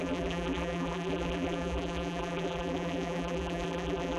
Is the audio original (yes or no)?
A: no